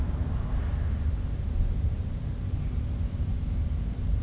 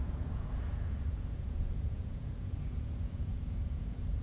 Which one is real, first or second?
first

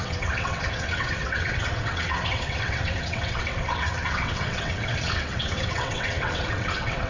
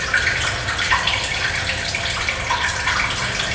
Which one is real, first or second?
second